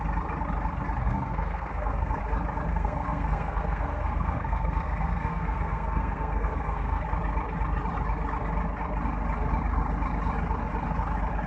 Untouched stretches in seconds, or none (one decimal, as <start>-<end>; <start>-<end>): 0.0-1.0; 2.2-2.7; 7.0-11.5